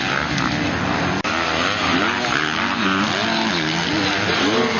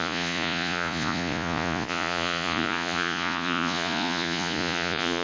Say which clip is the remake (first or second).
second